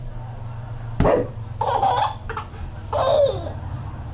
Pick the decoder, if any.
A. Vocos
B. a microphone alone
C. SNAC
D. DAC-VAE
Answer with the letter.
B